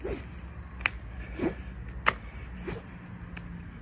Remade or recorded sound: recorded